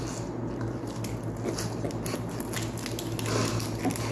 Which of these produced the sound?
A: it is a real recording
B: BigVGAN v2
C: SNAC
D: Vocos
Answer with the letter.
A